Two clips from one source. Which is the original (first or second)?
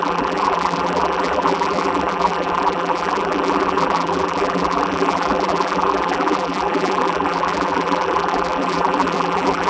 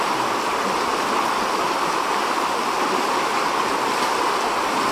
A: second